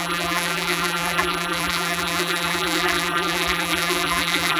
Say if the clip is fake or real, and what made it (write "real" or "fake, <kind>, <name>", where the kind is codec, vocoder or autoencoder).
fake, vocoder, BigVGAN v2